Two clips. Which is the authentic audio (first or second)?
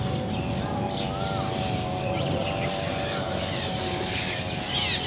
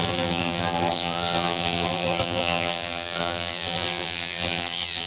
first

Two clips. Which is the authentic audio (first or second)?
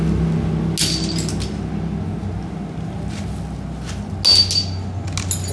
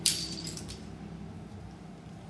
first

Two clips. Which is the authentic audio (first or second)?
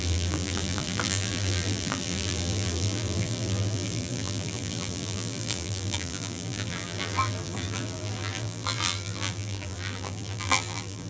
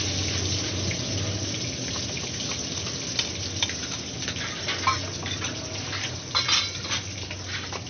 second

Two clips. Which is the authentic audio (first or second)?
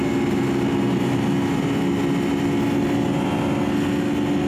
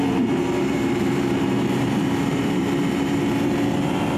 first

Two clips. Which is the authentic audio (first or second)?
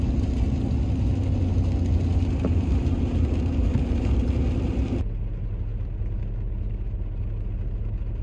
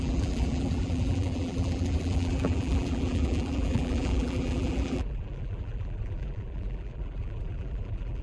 first